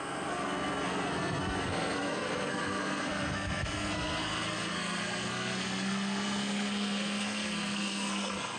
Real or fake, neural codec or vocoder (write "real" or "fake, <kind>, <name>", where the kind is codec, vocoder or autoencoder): fake, codec, SNAC